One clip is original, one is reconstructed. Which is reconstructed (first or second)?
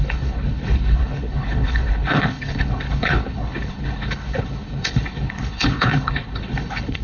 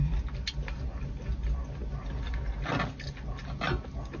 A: first